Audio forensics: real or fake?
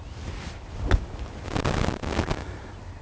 real